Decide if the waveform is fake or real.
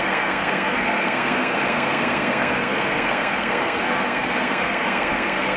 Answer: fake